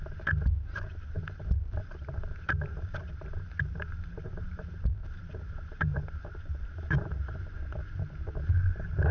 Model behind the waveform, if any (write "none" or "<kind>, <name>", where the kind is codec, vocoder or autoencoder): vocoder, BigVGAN v2